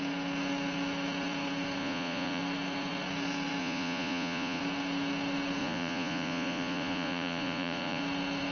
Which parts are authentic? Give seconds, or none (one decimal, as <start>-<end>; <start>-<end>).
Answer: 0.0-1.8; 2.4-3.6; 4.6-5.6; 8.0-8.5